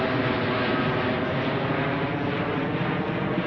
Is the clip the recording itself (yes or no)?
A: yes